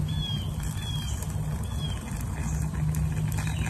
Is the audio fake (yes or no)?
no